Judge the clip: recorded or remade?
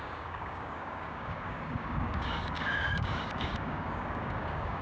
remade